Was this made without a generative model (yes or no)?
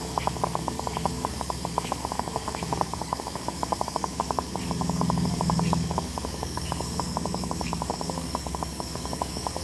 no